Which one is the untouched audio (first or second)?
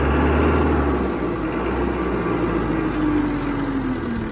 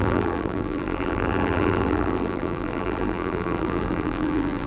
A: first